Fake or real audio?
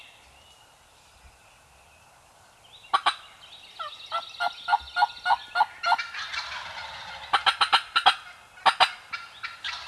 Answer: real